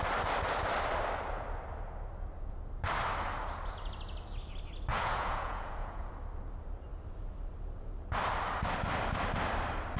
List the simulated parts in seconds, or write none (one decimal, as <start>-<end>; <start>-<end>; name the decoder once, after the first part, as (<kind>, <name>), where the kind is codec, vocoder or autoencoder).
4.9-6.1 (vocoder, Vocos)